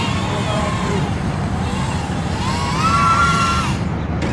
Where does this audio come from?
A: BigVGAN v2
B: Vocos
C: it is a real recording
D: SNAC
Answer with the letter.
C